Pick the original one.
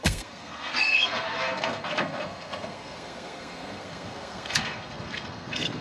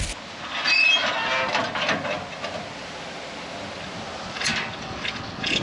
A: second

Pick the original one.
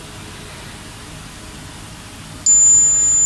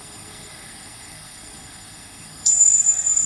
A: first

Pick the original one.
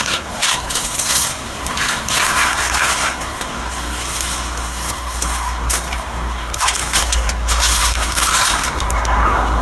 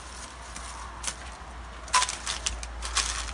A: second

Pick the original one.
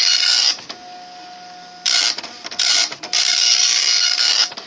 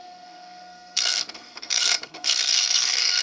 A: first